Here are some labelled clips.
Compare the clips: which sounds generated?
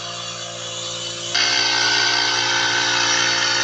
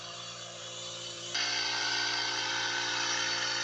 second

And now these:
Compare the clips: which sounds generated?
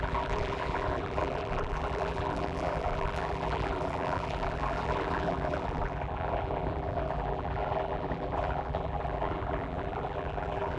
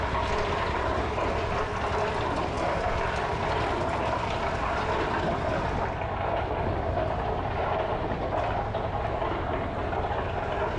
first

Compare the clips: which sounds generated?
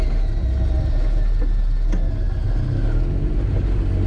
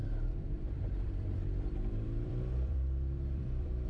second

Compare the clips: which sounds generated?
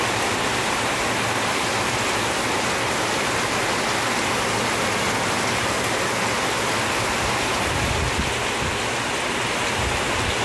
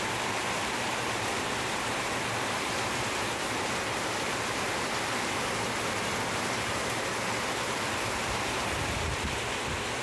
second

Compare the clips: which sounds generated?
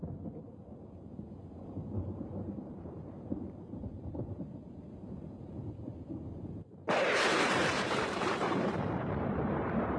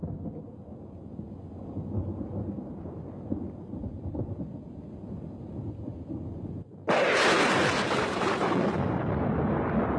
first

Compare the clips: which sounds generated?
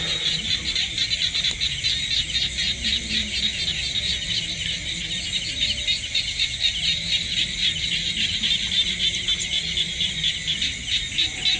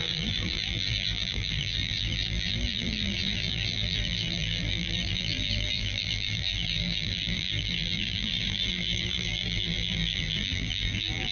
second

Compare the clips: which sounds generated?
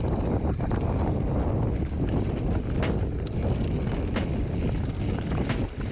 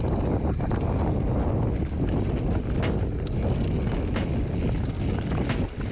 first